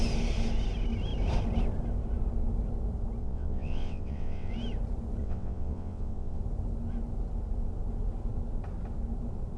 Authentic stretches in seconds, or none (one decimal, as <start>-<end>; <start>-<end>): 0.0-3.2; 4.5-5.2; 6.4-9.6